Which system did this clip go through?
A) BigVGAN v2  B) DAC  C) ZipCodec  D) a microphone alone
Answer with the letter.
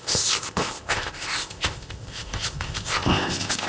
C